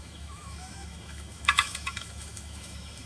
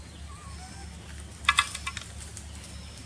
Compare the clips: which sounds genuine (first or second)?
second